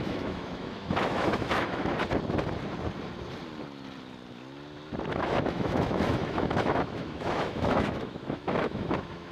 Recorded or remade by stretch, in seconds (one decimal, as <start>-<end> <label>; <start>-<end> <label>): 0.0-1.9 remade; 1.9-5.1 recorded; 5.1-9.3 remade